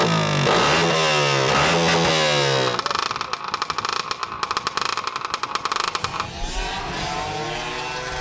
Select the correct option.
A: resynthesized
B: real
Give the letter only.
B